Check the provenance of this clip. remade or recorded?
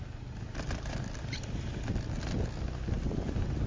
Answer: recorded